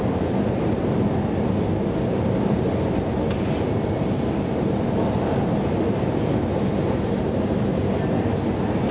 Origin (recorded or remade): recorded